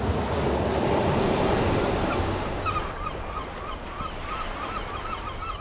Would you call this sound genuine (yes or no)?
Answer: yes